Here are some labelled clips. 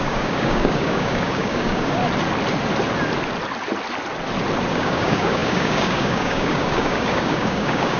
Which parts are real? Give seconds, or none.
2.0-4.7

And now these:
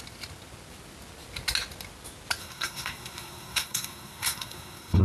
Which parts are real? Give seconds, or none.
0.0-2.4

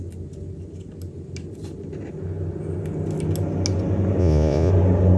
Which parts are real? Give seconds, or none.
0.0-4.2; 4.7-5.2

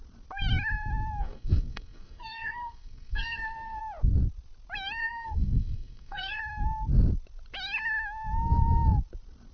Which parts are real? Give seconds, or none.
0.0-1.2; 3.8-5.0; 6.4-9.5

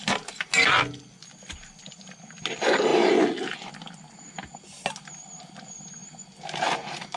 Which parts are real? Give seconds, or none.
0.0-7.2

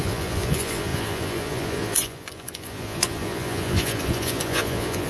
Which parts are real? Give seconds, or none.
none

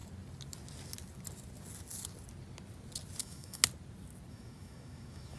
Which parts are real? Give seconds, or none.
0.0-3.2; 3.6-4.3

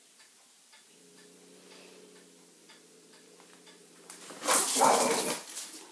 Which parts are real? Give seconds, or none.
0.0-3.8; 4.6-5.9